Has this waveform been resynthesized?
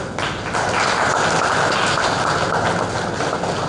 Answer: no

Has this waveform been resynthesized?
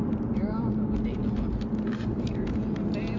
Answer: no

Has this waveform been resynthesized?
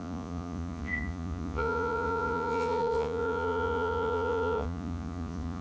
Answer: yes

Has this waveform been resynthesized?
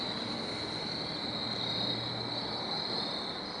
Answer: no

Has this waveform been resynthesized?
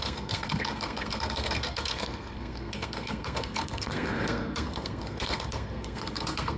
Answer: yes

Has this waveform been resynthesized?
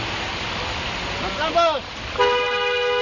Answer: no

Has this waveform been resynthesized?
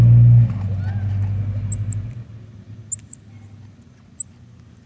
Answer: no